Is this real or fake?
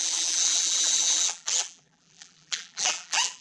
fake